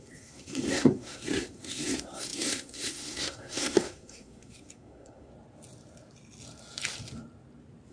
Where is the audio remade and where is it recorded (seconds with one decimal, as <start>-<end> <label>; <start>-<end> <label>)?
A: 0.0-5.3 remade; 5.3-7.9 recorded